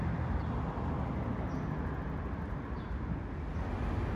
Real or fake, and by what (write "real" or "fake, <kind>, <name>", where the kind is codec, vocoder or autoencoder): real